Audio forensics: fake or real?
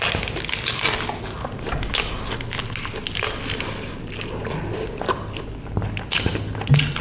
real